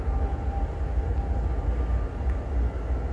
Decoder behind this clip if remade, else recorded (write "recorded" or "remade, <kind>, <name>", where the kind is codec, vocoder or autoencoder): recorded